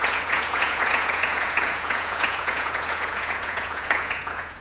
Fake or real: fake